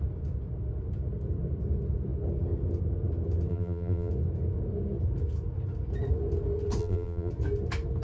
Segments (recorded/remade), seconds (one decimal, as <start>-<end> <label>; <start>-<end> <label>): 0.0-3.5 recorded; 3.5-4.1 remade; 4.1-6.8 recorded; 6.8-7.3 remade; 7.3-8.0 recorded

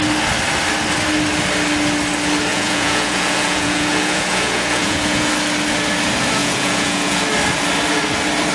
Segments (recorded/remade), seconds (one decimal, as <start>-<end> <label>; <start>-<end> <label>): 0.0-2.5 recorded; 2.5-5.3 remade; 5.3-6.4 recorded; 6.4-7.2 remade; 7.2-8.5 recorded

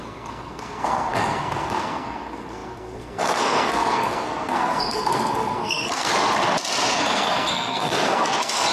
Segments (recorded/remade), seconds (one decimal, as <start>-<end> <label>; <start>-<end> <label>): 0.0-6.1 remade; 6.1-6.9 recorded; 6.9-8.7 remade

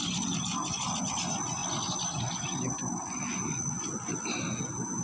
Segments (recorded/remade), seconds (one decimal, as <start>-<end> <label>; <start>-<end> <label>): 0.0-5.0 recorded

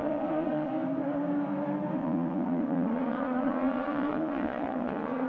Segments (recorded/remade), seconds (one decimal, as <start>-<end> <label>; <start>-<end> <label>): 0.0-0.7 remade; 0.7-2.0 recorded; 2.0-5.3 remade

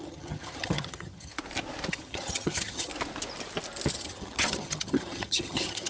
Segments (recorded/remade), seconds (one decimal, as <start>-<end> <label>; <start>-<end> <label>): 0.0-1.3 remade; 1.3-1.9 recorded; 1.9-2.9 remade; 2.9-3.9 recorded; 3.9-5.9 remade

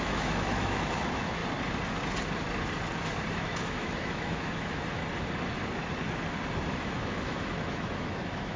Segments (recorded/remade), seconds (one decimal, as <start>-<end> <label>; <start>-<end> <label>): 0.0-1.4 remade; 1.4-3.3 recorded; 3.3-5.0 remade; 5.0-6.7 recorded; 6.7-8.6 remade